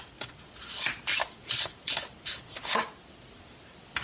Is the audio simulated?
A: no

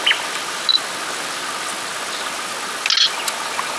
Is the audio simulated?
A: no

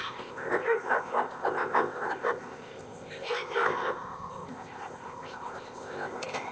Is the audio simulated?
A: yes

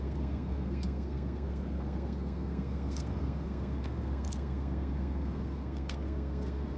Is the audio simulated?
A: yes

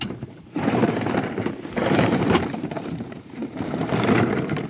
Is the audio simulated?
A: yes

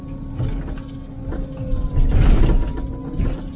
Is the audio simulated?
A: no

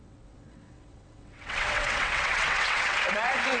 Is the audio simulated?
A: yes